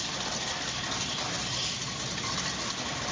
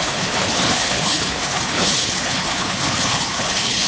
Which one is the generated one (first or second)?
second